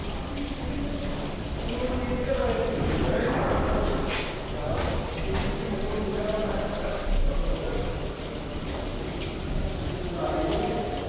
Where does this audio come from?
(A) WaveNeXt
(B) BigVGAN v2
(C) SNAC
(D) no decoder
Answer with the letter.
D